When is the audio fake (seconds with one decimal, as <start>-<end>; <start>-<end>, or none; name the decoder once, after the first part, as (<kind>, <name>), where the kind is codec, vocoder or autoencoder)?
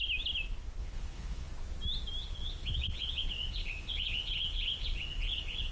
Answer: 0.8-1.5 (vocoder, Vocos); 2.2-5.7